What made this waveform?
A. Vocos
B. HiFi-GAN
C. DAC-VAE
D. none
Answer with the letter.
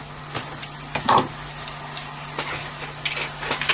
D